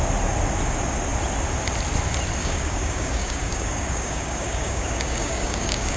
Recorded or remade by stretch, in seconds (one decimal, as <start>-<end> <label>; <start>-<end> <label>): 0.0-2.4 recorded; 2.4-6.0 remade